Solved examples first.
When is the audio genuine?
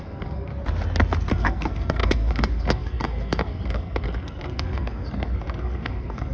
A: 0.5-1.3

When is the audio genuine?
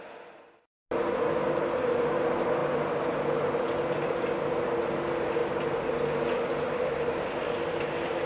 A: 0.0-8.3